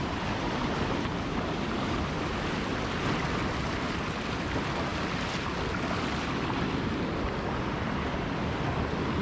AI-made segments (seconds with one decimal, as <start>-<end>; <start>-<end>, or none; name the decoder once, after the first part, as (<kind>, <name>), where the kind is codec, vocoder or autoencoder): none